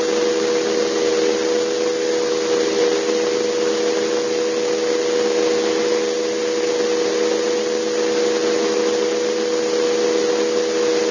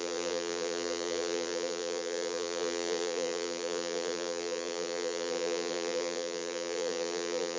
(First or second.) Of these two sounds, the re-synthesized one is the second